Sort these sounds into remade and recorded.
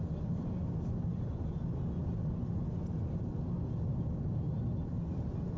recorded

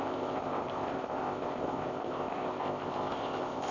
remade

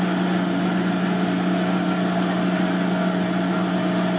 recorded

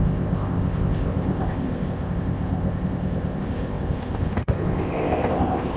remade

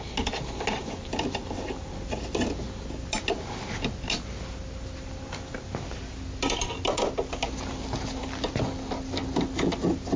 recorded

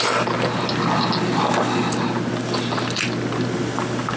recorded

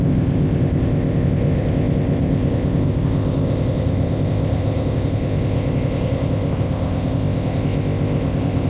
remade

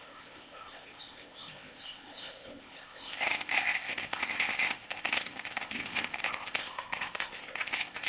remade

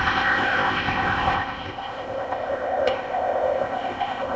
remade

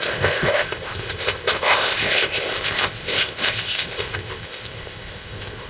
remade